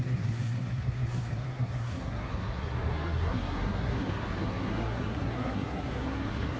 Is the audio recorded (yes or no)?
no